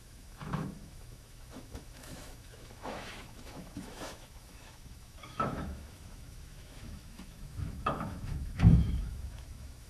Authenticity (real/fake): fake